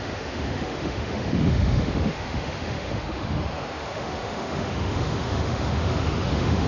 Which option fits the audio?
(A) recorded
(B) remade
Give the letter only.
B